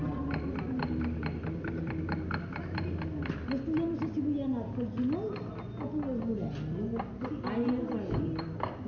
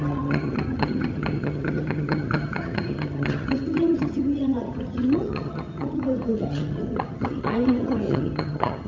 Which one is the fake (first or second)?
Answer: second